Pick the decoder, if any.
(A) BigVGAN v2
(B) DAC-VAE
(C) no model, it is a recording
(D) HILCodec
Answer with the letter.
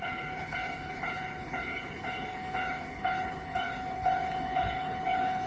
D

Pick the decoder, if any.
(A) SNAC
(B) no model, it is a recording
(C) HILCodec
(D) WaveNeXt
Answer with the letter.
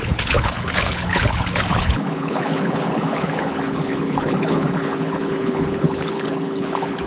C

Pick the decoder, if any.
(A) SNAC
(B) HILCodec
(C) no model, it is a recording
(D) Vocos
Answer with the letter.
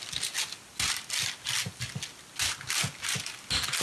C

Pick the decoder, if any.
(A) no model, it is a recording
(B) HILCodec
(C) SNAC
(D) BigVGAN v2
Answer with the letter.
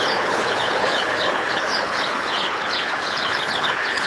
B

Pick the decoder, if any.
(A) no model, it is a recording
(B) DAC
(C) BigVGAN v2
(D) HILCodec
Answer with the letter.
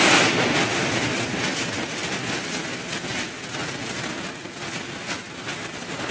A